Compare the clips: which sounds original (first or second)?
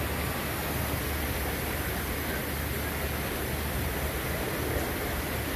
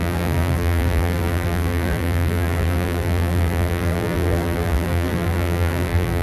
first